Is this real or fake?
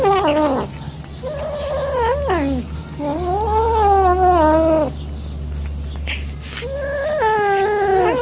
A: real